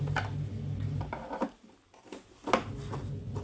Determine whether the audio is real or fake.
real